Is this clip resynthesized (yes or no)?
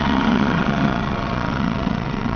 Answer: yes